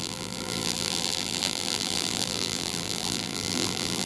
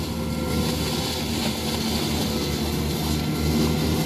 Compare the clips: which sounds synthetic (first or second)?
first